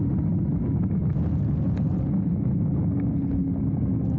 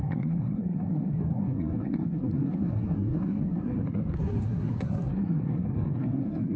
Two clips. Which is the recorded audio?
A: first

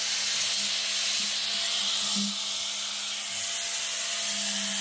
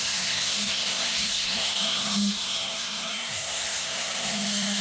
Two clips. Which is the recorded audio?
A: first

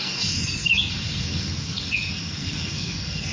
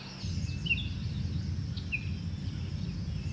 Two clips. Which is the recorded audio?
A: second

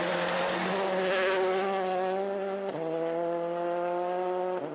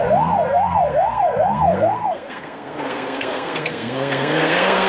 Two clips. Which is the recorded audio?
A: first